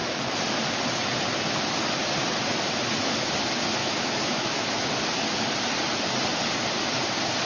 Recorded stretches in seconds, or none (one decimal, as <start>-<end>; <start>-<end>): 0.0-3.8; 5.0-7.5